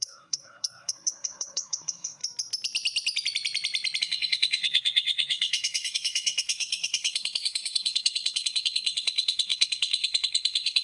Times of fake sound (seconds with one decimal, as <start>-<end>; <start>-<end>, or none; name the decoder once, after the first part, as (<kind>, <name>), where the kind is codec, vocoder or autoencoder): 0.0-2.2 (codec, SNAC); 4.0-10.8